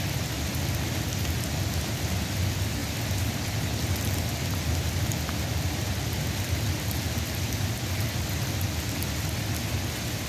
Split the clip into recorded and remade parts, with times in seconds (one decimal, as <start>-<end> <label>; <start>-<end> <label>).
0.0-2.8 recorded; 2.8-3.6 remade; 3.6-10.3 recorded